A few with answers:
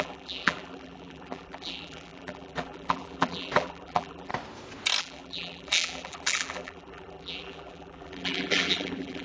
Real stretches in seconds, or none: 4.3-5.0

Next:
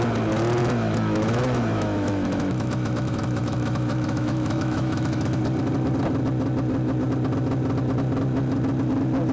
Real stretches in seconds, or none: 0.0-0.6; 5.4-9.3

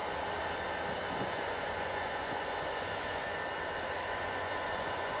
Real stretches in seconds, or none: 0.0-1.1; 3.4-4.1